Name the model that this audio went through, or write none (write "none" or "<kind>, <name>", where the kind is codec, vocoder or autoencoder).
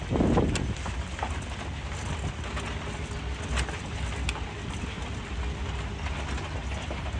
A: none